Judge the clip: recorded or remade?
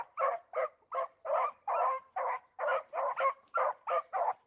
remade